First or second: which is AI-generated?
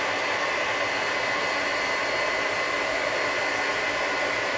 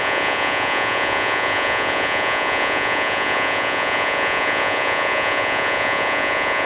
second